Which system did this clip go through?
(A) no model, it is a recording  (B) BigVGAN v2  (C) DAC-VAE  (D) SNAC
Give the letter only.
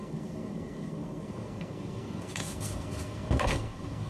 D